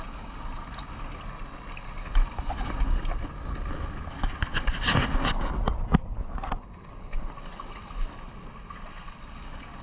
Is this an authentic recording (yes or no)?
yes